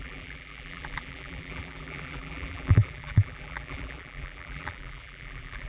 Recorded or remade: remade